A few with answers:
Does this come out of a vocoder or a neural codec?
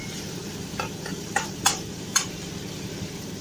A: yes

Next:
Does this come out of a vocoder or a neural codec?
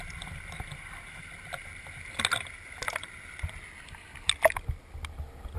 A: no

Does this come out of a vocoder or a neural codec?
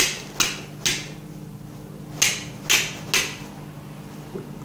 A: no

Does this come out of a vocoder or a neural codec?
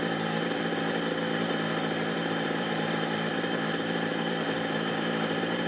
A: yes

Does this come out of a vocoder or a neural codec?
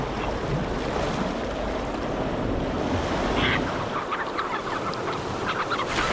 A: no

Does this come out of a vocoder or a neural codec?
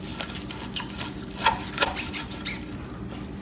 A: no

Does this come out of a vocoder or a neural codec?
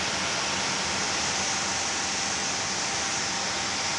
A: no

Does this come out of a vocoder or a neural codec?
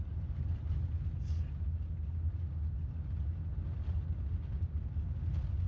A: no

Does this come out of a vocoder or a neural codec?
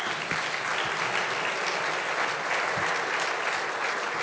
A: no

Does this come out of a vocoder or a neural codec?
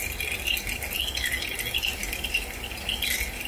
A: no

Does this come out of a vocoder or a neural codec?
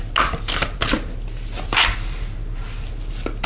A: no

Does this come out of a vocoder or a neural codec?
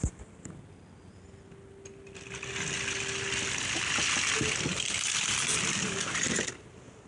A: no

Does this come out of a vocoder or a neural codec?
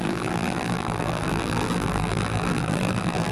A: yes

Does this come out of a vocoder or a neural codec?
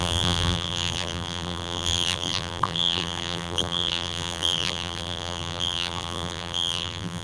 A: yes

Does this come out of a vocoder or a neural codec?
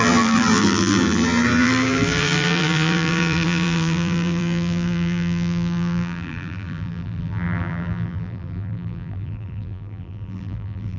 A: yes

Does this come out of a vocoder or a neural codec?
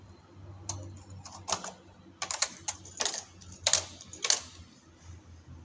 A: no